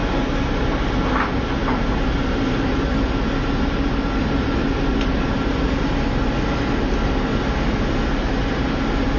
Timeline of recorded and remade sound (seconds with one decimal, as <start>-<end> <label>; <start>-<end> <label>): 0.0-9.2 recorded